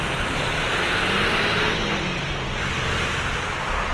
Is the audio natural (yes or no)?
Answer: yes